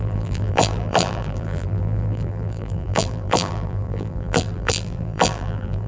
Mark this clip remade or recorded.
remade